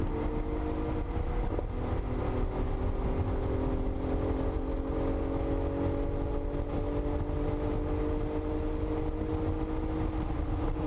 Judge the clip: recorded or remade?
recorded